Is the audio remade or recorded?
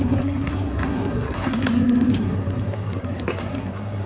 remade